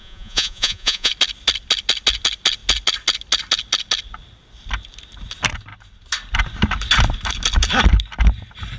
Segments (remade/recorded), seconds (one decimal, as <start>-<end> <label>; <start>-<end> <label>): 0.0-1.1 remade; 1.1-8.8 recorded